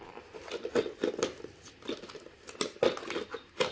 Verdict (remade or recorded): recorded